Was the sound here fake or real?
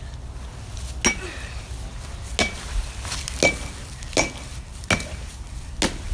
real